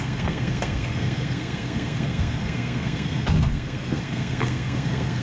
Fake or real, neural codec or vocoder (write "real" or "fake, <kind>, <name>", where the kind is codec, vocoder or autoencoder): fake, codec, SNAC